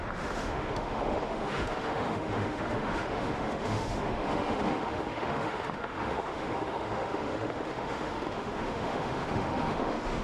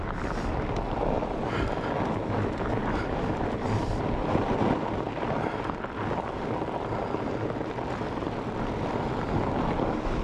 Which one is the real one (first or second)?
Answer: second